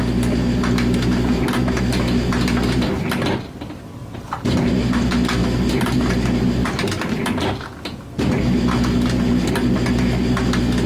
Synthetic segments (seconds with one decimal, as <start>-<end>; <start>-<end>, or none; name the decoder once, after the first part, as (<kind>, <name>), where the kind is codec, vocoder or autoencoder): 4.0-4.7 (vocoder, BigVGAN v2)